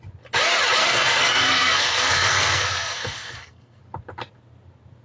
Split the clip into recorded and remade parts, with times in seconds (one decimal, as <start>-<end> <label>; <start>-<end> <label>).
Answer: 0.0-0.8 recorded; 0.8-3.8 remade; 3.8-5.0 recorded